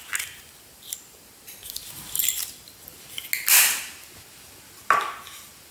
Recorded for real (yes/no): yes